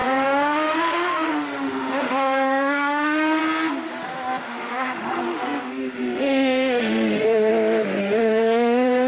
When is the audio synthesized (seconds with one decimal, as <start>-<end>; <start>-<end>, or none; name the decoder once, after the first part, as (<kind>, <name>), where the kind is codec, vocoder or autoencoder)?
0.0-3.4 (autoencoder, DAC-VAE); 4.4-7.5; 8.0-9.1